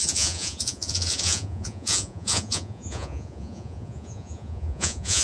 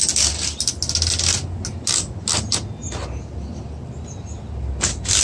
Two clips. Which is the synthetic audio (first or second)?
first